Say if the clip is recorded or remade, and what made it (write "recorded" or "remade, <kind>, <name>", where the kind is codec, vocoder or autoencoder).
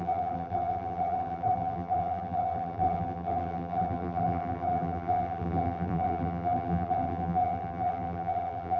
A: remade, vocoder, BigVGAN v2